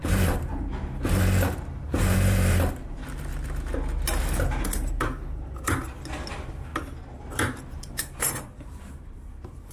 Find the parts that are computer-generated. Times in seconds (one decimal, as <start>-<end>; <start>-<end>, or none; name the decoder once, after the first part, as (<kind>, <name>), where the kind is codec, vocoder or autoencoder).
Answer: 0.0-0.7 (vocoder, BigVGAN v2); 1.8-3.3; 6.3-6.7; 7.6-9.7